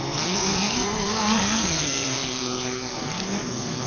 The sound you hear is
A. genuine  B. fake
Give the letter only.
B